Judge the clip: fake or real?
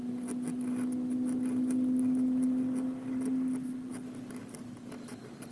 real